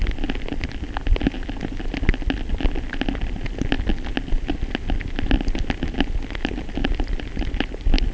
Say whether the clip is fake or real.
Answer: real